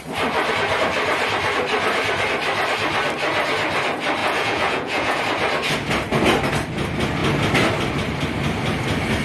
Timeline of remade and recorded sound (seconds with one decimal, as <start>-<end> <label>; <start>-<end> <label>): 0.0-4.2 recorded; 4.2-5.2 remade; 5.2-9.2 recorded